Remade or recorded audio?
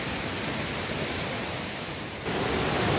recorded